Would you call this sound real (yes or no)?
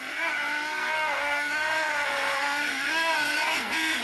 no